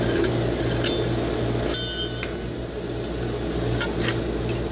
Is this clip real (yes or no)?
yes